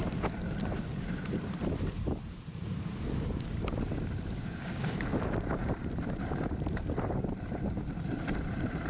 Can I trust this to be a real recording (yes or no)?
no